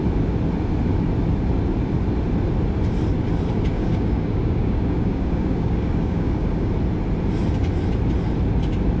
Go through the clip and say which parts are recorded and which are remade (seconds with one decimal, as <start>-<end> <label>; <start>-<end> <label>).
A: 0.0-3.7 recorded; 3.7-6.7 remade; 6.7-9.0 recorded